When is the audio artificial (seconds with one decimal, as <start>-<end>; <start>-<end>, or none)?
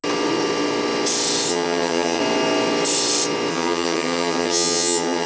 1.5-2.2; 3.5-5.3